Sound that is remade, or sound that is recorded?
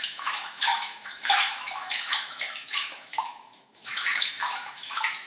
remade